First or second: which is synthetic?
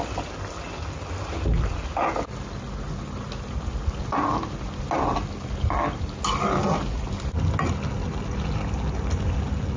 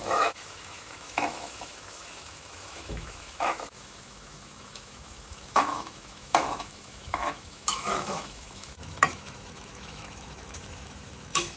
second